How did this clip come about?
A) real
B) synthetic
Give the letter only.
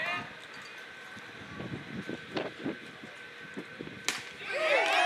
A